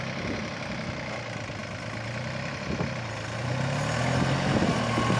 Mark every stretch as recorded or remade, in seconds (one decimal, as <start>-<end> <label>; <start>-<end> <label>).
0.0-5.2 recorded